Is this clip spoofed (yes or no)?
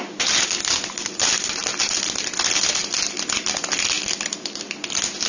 no